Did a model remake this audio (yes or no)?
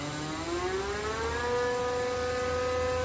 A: no